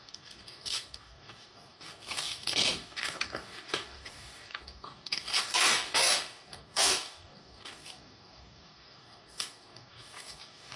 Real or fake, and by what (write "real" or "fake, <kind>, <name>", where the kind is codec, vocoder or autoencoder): fake, codec, DAC